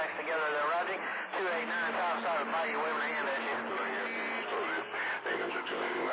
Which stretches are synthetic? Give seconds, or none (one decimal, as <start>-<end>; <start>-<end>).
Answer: 5.3-6.1